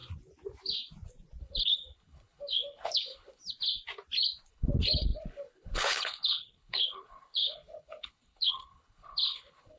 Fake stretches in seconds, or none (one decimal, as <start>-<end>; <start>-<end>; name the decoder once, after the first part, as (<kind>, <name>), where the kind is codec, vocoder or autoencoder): 1.4-3.4 (codec, HILCodec); 4.5-9.8